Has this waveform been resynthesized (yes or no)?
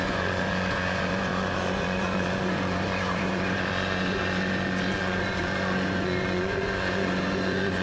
yes